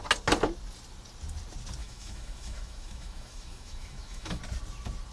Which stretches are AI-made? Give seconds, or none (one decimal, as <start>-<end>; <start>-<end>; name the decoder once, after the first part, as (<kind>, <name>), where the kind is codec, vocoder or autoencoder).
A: 1.8-4.4 (autoencoder, DAC-VAE)